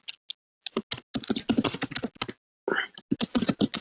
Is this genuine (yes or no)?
yes